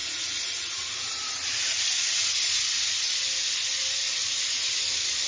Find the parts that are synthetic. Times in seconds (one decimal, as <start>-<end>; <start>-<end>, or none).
0.0-3.2; 4.2-4.7

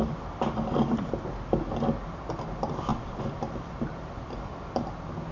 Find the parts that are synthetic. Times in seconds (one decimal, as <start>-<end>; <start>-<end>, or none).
none

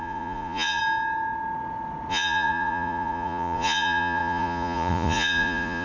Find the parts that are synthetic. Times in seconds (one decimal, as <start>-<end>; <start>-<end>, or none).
0.0-0.8; 2.1-5.8